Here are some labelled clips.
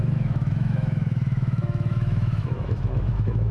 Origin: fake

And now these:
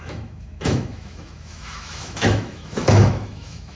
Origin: fake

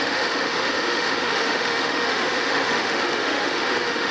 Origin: fake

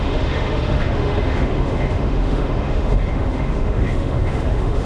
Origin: fake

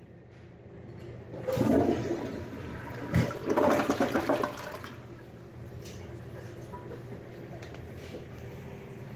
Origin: real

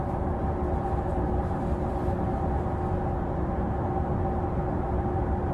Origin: real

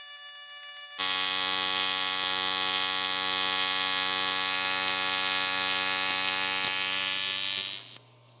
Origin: real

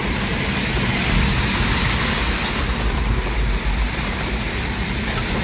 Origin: real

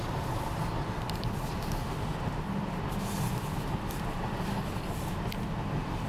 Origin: real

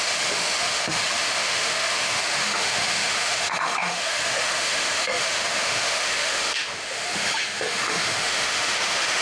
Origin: fake